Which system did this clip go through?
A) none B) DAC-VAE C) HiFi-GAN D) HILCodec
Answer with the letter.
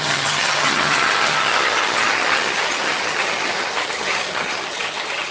C